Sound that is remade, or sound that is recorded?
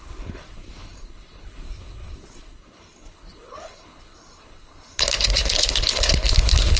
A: remade